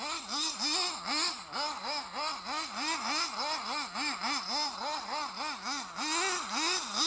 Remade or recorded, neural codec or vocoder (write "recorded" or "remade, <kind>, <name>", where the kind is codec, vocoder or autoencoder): recorded